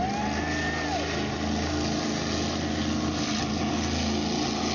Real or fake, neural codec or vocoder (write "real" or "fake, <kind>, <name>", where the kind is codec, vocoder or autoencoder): real